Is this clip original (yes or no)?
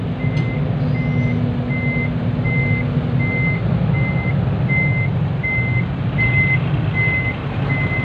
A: yes